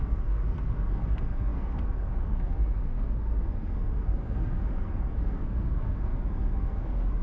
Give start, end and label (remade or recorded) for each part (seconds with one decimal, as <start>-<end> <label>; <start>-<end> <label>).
0.0-7.2 remade